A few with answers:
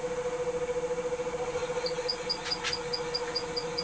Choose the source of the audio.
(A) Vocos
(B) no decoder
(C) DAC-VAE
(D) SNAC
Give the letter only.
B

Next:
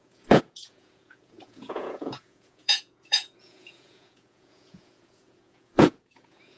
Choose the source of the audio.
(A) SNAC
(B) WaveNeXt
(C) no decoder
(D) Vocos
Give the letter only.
D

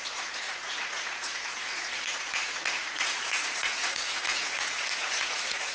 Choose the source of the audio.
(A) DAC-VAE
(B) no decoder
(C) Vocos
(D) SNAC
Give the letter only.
C